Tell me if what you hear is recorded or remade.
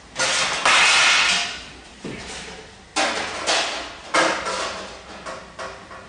recorded